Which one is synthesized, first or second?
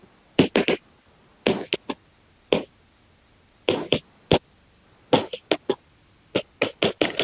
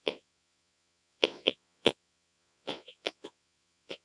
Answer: second